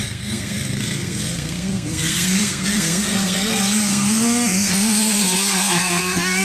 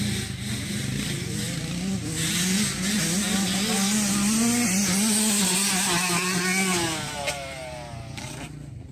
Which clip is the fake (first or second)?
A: first